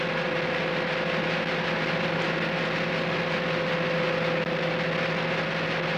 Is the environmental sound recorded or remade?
recorded